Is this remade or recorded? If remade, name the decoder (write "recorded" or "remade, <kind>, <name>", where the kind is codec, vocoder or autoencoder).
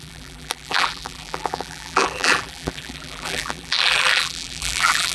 remade, vocoder, BigVGAN v2